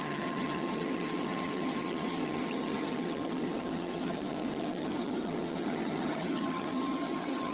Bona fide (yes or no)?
no